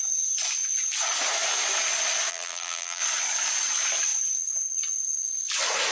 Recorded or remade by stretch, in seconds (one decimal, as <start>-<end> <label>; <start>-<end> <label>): 0.0-2.3 recorded; 2.3-3.0 remade; 3.0-5.9 recorded